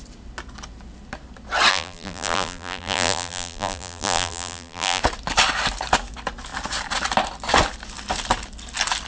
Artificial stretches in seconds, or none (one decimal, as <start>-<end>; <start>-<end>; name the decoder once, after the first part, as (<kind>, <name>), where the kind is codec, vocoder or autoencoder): 1.7-5.0 (vocoder, BigVGAN v2)